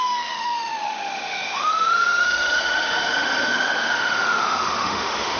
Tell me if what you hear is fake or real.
fake